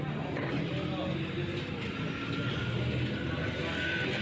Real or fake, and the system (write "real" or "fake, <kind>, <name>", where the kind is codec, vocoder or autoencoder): real